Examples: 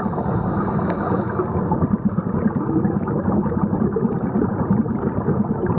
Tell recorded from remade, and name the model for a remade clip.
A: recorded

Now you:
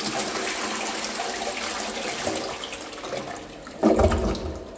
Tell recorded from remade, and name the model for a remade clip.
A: recorded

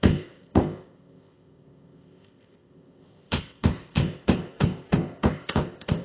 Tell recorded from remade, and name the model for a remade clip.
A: remade, codec, ZipCodec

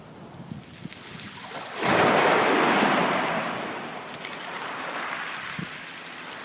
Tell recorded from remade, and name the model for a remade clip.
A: recorded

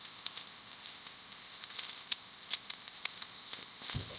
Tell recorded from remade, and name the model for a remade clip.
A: remade, codec, ZipCodec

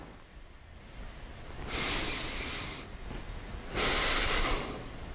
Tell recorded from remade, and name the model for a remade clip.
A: recorded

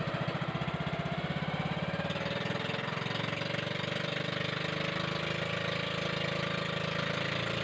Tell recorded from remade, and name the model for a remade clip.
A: recorded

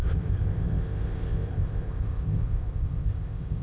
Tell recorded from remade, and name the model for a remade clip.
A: remade, codec, ZipCodec